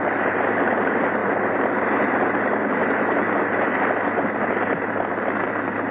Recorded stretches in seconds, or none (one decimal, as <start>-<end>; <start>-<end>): 0.0-5.9